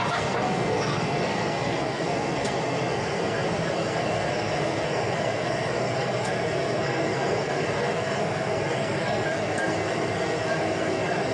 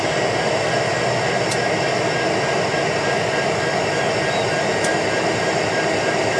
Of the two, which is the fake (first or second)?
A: first